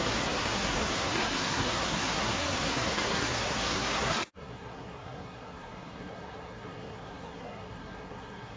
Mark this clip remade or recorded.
remade